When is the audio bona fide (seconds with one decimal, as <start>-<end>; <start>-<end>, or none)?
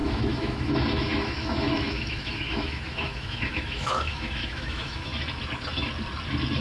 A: 5.1-6.6